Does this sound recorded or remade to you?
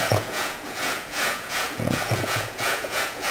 remade